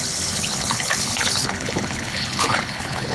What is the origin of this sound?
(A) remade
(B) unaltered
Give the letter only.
A